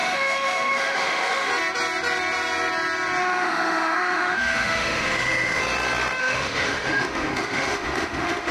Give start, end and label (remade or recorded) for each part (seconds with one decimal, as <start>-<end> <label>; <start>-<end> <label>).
0.0-1.5 remade; 1.5-3.2 recorded; 3.2-5.6 remade; 5.6-6.2 recorded; 6.2-8.5 remade